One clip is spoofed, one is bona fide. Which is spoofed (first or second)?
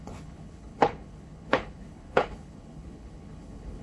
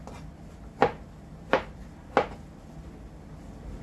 first